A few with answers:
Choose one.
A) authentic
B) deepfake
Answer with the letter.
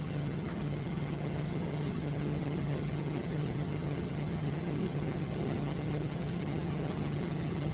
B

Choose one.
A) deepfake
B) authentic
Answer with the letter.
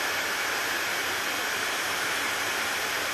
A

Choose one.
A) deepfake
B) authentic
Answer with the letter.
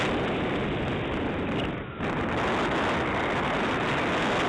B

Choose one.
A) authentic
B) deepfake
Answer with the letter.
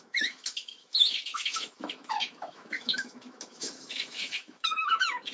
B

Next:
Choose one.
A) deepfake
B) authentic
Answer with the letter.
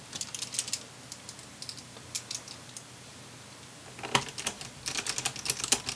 B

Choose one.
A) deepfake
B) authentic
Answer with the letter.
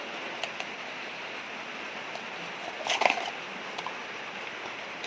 B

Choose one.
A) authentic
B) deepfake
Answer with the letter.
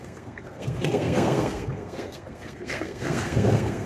B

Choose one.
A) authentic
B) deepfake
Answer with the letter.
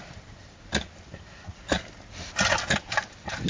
A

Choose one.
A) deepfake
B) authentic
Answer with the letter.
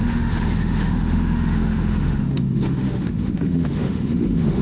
A